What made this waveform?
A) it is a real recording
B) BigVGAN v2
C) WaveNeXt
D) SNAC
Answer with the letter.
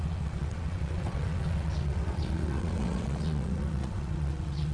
C